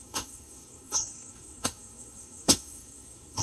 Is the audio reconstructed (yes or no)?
yes